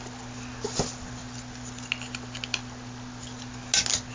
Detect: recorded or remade recorded